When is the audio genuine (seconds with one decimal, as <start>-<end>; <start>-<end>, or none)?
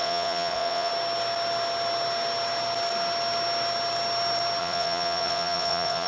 0.9-4.6